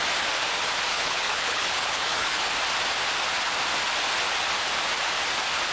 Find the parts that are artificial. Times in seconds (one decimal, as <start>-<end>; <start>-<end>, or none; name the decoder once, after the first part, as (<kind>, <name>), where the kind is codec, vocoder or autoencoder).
0.9-2.5 (codec, HILCodec)